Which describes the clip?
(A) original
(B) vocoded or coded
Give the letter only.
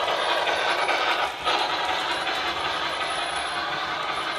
A